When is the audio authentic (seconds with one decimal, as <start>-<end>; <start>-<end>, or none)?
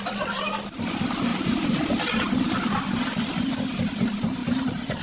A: 0.0-1.3; 2.3-4.4